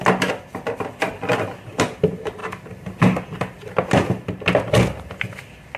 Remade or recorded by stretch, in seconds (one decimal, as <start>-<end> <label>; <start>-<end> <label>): 0.0-2.4 remade; 2.4-5.2 recorded; 5.2-5.8 remade